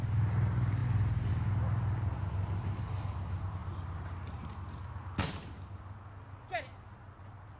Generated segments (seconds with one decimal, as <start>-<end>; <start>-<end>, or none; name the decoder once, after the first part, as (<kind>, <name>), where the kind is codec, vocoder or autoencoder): none